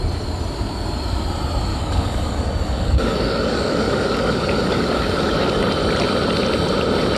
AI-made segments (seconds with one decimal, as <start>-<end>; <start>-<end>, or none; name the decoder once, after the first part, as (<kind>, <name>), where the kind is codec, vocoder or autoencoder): 1.7-5.6 (codec, DAC)